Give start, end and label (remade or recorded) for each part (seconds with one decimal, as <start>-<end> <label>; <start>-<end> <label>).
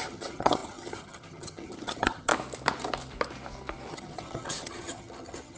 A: 0.0-2.3 remade; 2.3-3.9 recorded; 3.9-5.6 remade